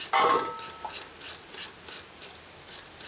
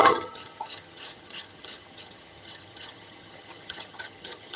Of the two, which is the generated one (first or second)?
second